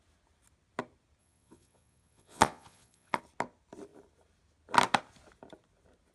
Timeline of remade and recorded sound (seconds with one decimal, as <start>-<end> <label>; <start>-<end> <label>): 0.0-1.2 recorded; 1.2-3.2 remade; 3.2-6.1 recorded